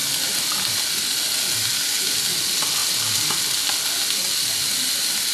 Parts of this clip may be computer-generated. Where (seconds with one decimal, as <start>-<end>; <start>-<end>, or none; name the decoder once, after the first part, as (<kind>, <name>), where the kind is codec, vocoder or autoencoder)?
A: none